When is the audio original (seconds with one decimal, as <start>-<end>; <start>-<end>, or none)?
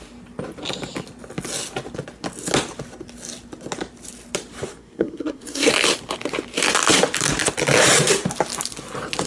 0.0-4.7; 5.7-9.3